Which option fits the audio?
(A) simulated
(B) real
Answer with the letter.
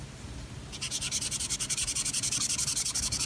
B